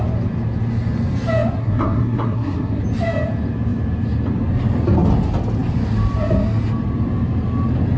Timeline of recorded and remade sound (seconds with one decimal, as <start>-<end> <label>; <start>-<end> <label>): 0.0-1.6 recorded; 1.6-2.8 remade; 2.8-8.0 recorded